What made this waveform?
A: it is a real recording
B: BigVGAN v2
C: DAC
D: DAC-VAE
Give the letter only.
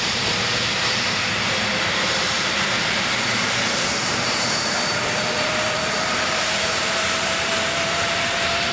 B